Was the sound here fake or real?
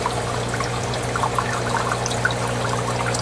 real